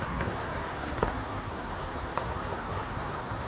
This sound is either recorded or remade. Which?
remade